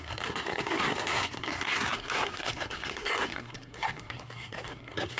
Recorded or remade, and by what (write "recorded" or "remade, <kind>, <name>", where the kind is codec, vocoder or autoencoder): remade, codec, SNAC